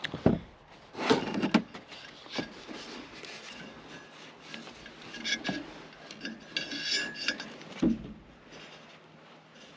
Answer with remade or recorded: recorded